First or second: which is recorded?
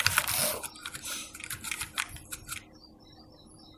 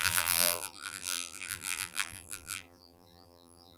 first